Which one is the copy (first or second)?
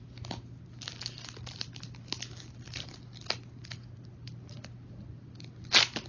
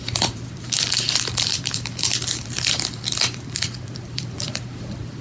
second